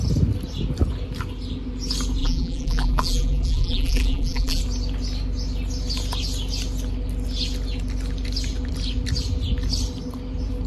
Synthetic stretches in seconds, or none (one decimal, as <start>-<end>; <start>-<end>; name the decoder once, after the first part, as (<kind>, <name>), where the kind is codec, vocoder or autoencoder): 2.2-4.6 (vocoder, BigVGAN v2)